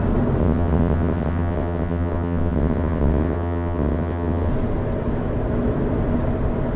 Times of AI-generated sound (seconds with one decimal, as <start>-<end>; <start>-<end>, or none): 0.4-4.5

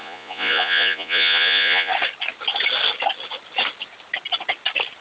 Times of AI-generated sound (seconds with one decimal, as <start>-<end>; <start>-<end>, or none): 0.0-1.9

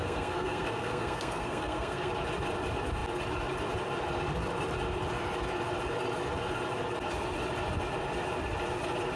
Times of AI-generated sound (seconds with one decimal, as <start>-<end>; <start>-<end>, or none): 0.0-2.1